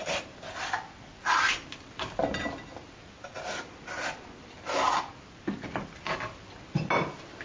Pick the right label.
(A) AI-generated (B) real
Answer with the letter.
B